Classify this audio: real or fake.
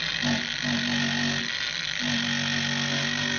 real